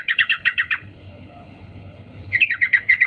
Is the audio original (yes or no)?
no